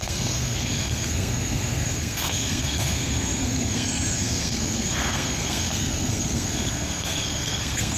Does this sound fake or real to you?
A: fake